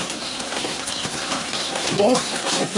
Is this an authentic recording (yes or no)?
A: no